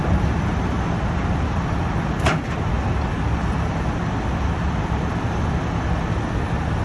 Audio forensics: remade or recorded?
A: recorded